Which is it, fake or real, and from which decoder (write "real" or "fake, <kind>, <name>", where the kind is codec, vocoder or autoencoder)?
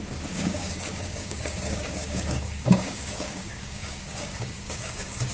fake, codec, DAC